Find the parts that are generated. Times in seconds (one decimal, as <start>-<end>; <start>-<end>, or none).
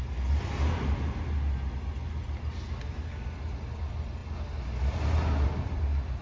none